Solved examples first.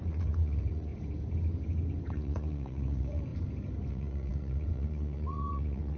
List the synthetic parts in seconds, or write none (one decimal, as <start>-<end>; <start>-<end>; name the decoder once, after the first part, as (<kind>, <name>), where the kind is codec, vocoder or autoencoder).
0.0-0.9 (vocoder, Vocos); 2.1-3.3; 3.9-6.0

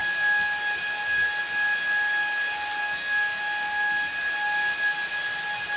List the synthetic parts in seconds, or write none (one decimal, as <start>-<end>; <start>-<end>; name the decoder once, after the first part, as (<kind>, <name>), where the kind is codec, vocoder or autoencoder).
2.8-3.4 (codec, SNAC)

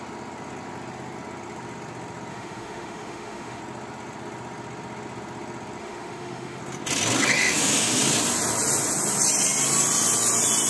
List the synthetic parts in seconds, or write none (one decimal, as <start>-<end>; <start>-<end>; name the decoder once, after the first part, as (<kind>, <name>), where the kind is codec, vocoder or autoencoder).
2.3-3.6 (autoencoder, DAC-VAE); 5.8-6.6; 7.4-8.0